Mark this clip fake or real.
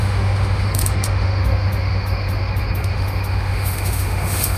fake